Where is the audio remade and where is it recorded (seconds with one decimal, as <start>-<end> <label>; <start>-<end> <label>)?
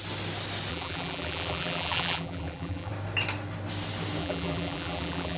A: 0.0-0.7 recorded; 0.7-2.9 remade; 2.9-4.2 recorded; 4.2-5.4 remade